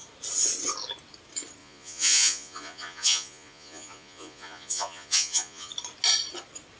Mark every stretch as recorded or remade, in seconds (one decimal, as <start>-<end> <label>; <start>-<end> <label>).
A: 0.0-1.6 recorded; 1.6-5.7 remade; 5.7-6.8 recorded